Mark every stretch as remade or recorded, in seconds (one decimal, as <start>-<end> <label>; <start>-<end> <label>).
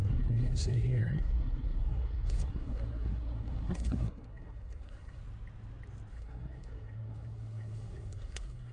0.0-5.2 remade; 5.2-6.1 recorded; 6.1-8.7 remade